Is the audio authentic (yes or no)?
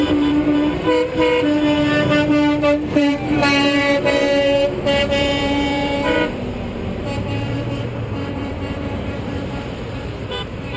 no